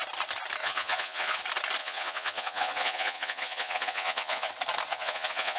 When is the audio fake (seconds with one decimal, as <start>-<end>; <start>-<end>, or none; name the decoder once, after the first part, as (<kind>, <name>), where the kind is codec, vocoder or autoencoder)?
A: 0.6-1.4 (vocoder, Vocos); 1.8-4.5; 4.9-5.6